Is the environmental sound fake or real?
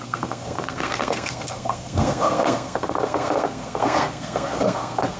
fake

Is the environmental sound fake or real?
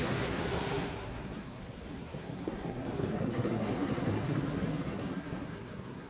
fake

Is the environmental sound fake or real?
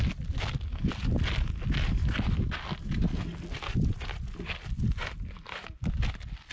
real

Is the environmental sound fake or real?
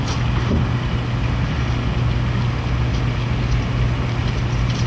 real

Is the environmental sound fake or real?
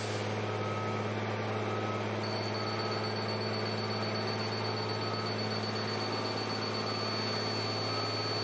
real